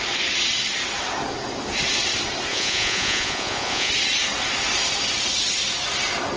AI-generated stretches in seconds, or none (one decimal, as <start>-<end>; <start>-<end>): 2.5-3.9